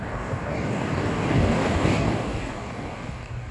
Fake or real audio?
fake